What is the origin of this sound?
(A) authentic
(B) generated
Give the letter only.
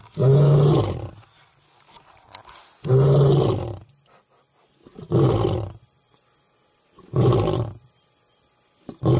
A